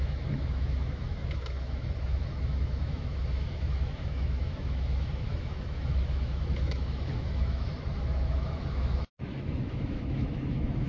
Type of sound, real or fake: fake